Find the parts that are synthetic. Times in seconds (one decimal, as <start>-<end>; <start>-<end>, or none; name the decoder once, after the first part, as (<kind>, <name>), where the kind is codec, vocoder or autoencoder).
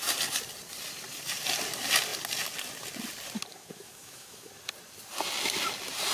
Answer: 3.5-4.5 (autoencoder, DAC-VAE)